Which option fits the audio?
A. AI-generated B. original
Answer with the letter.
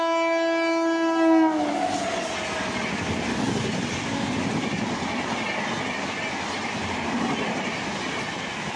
B